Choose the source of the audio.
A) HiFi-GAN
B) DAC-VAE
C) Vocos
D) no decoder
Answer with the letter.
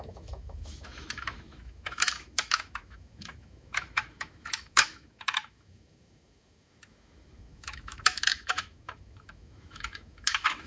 B